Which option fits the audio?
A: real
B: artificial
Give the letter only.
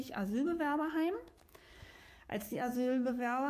B